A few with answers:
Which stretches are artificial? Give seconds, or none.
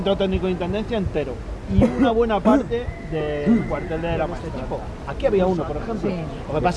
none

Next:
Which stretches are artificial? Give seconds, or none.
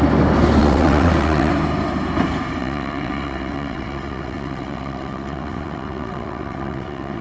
0.6-1.5 (vocoder, WaveNeXt); 2.6-7.2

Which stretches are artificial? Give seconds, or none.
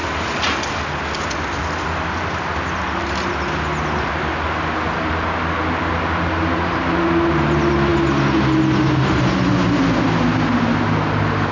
none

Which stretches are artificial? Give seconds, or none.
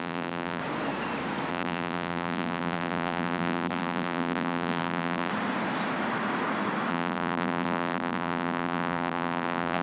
0.0-0.6 (vocoder, BigVGAN v2); 1.5-5.3; 6.9-9.8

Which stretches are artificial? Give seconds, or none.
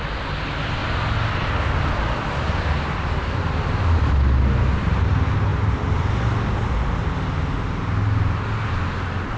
none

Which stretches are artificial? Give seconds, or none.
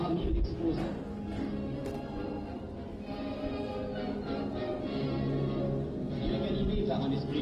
none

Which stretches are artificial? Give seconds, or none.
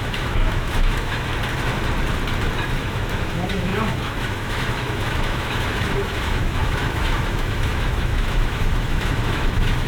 0.0-1.3 (autoencoder, DAC-VAE); 2.8-9.9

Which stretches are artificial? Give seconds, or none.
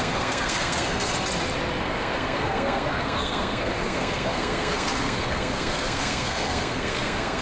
0.0-1.1 (codec, SNAC); 1.8-7.4